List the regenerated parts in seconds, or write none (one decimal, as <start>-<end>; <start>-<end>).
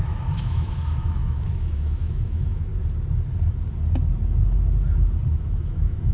0.0-2.7; 5.3-6.1